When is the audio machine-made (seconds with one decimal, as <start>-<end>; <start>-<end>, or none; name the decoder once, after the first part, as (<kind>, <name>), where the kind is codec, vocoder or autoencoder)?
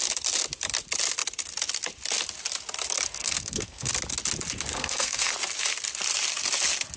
3.2-3.9 (codec, SNAC); 4.7-5.3